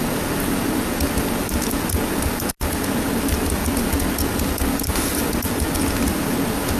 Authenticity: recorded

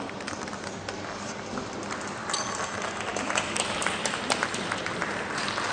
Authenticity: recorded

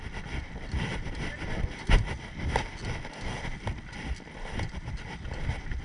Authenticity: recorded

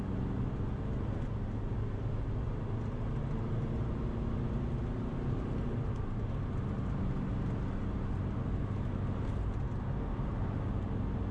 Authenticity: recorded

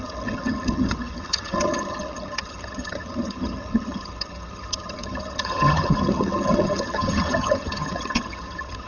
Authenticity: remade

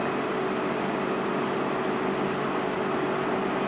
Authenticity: recorded